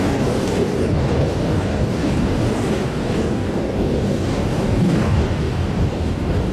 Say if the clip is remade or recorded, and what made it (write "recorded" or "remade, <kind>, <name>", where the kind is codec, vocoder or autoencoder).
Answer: remade, codec, DAC